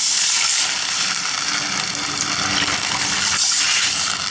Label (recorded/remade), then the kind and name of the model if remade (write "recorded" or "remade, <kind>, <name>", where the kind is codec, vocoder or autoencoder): recorded